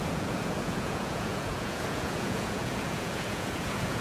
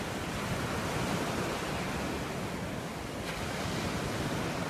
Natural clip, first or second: second